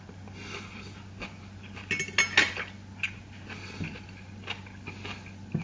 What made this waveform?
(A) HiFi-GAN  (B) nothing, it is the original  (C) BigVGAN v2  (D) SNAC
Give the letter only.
B